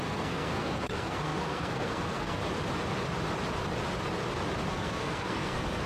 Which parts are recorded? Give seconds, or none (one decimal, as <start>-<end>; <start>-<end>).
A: 2.4-4.7